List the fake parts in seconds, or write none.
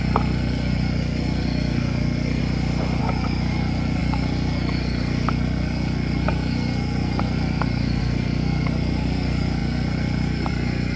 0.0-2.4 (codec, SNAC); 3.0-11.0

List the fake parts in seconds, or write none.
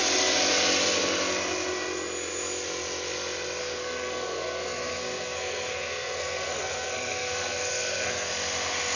3.6-8.3 (codec, SNAC)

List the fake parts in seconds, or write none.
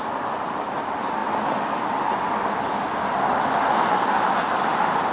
none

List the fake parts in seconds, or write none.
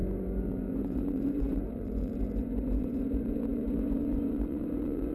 0.0-5.1 (vocoder, Vocos)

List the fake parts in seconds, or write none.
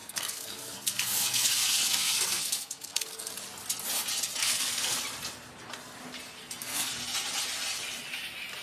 0.0-3.3 (codec, SNAC); 4.4-5.0; 6.4-6.9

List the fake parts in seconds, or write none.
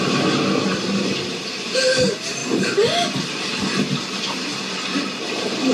none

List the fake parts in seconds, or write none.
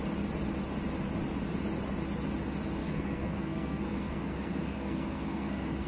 2.8-5.9 (codec, SNAC)